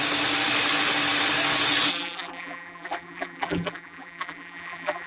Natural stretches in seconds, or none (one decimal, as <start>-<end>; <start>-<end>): 0.0-1.9